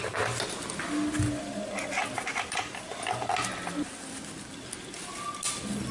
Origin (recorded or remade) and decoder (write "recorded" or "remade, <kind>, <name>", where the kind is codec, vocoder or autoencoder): recorded